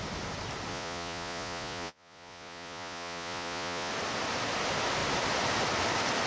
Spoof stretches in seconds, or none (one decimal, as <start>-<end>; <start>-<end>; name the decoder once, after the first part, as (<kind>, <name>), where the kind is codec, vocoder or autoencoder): 0.7-3.9 (vocoder, Vocos)